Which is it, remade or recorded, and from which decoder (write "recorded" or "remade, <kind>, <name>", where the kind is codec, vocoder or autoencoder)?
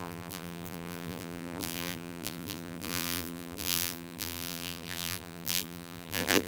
remade, vocoder, BigVGAN v2